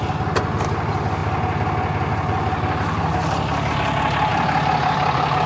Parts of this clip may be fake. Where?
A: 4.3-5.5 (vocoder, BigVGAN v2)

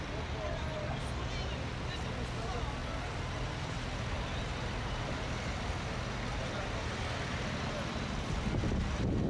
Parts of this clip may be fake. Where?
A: 2.8-3.5 (vocoder, BigVGAN v2)

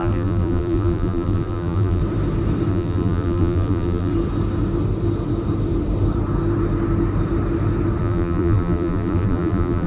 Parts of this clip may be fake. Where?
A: 0.0-2.0 (vocoder, BigVGAN v2); 2.7-4.1; 8.0-9.9

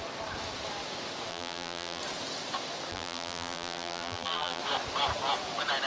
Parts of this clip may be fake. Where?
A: 1.3-2.0 (vocoder, BigVGAN v2); 2.9-4.6

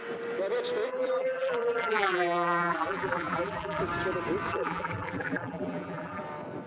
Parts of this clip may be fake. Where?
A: 0.9-3.8 (vocoder, BigVGAN v2); 4.5-6.2

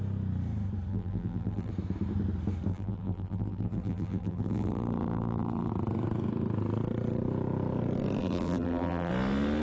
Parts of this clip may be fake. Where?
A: 0.9-1.7 (vocoder, BigVGAN v2); 2.7-5.7; 8.2-9.1

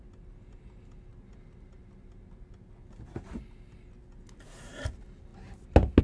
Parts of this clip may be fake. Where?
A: none

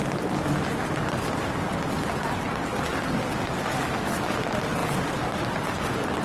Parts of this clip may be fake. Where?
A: none